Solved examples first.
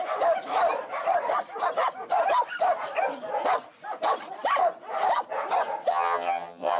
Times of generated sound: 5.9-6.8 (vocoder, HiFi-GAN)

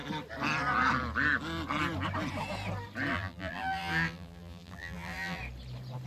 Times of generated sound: 3.1-5.4 (vocoder, BigVGAN v2)

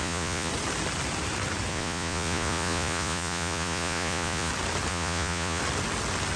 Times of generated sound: 0.0-0.5 (vocoder, Vocos); 1.7-4.5; 4.9-5.6

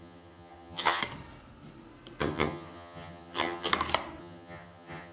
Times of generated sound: 0.0-1.0 (vocoder, HiFi-GAN); 2.2-3.7; 4.2-5.1

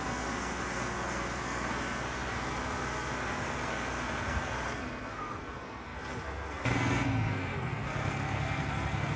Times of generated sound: 0.0-9.2 (codec, SNAC)

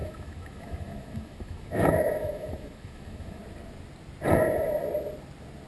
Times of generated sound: 0.0-3.4 (autoencoder, DAC-VAE)

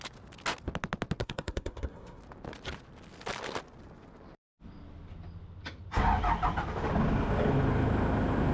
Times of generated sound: 1.2-2.2 (codec, SNAC)

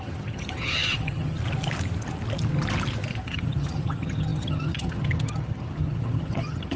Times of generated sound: 0.0-1.4 (vocoder, HiFi-GAN); 3.2-6.8